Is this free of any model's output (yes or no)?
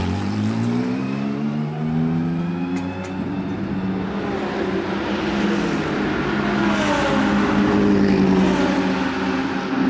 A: yes